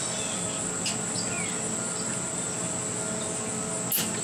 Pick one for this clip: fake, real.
real